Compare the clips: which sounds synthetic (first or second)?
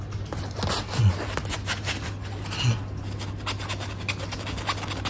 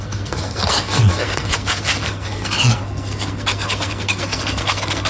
second